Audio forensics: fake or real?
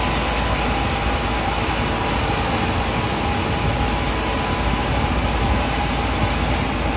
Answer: real